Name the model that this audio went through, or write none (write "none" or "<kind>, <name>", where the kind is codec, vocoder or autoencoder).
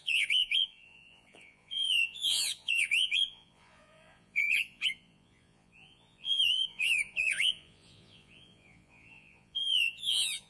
vocoder, Vocos